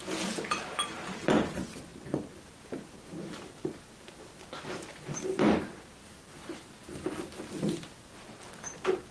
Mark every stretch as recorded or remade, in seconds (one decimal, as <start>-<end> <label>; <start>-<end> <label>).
0.0-1.9 recorded; 1.9-4.2 remade; 4.2-4.9 recorded; 4.9-6.8 remade; 6.8-9.1 recorded